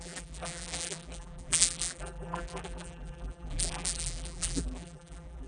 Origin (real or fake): fake